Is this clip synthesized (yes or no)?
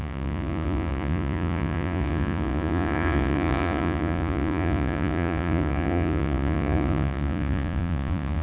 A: yes